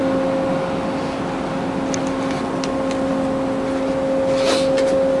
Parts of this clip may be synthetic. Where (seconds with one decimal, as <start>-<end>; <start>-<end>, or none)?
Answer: none